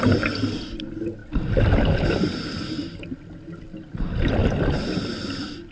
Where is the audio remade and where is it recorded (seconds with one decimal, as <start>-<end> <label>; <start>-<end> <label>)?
0.0-5.7 recorded